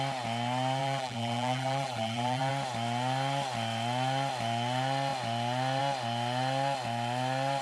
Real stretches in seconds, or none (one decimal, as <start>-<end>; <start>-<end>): 0.0-0.8; 2.5-7.6